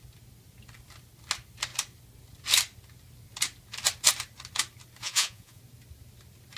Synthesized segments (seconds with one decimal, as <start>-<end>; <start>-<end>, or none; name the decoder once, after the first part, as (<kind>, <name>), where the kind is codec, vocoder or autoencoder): 5.0-5.6 (vocoder, Vocos)

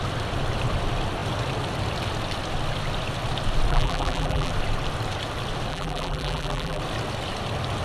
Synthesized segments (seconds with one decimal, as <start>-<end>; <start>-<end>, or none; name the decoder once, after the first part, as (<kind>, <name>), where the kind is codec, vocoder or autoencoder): 3.7-4.5 (vocoder, BigVGAN v2); 5.7-6.8

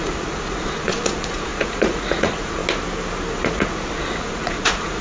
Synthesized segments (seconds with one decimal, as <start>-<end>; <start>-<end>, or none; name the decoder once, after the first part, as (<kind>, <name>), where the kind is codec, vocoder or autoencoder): 0.0-2.6 (vocoder, Vocos); 3.4-5.0

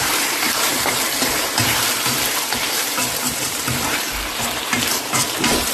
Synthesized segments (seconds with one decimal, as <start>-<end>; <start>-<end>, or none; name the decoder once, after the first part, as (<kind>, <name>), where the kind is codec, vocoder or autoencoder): 0.0-5.7 (vocoder, BigVGAN v2)

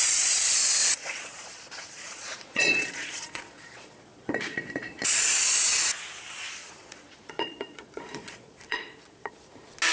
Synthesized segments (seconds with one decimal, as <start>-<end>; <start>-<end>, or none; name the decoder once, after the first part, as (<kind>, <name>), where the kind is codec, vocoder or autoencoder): 0.8-5.2 (vocoder, Vocos); 6.6-9.5